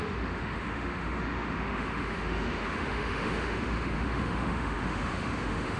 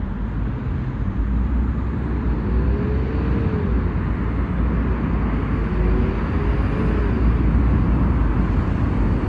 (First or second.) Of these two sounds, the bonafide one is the second